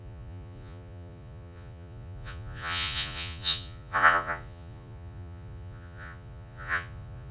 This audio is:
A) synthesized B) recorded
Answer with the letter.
A